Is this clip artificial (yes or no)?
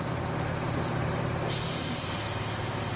no